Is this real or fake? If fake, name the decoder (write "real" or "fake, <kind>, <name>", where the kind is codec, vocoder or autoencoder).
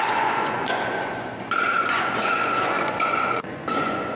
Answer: fake, vocoder, Vocos